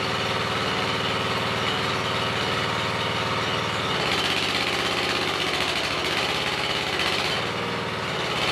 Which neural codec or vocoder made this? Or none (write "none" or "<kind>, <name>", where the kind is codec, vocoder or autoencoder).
none